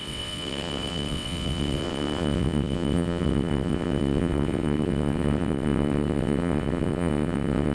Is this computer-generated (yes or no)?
yes